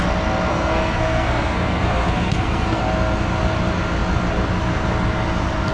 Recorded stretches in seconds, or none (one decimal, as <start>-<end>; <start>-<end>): 0.0-0.5; 2.8-5.7